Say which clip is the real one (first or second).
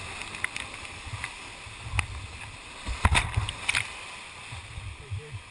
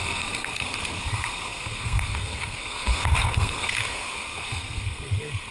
first